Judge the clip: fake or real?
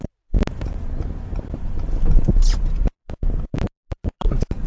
real